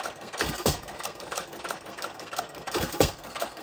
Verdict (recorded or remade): remade